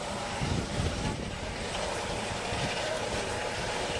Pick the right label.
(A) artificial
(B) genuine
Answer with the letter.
A